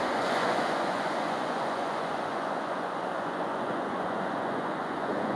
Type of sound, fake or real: fake